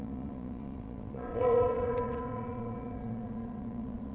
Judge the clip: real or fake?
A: fake